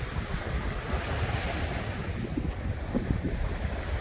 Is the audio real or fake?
real